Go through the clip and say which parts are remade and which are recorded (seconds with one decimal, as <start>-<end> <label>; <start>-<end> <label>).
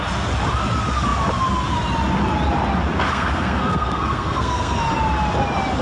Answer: 0.0-3.1 recorded; 3.1-4.8 remade; 4.8-5.8 recorded